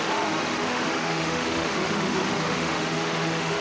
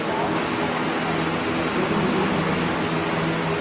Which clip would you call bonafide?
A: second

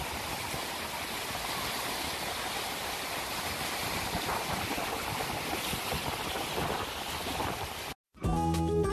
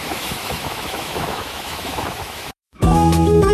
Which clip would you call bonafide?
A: first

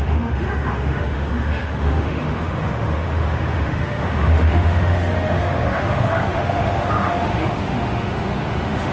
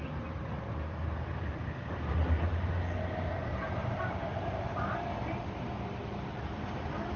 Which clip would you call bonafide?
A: second